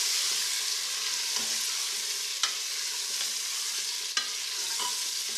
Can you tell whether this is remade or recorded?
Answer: recorded